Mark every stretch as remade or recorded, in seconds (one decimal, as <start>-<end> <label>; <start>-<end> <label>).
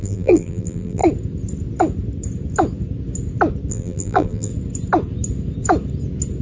0.0-1.0 remade; 1.0-3.7 recorded; 3.7-4.5 remade; 4.5-6.4 recorded